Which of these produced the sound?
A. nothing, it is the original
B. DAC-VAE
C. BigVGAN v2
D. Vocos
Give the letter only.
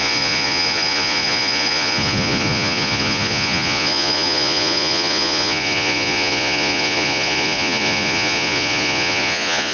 D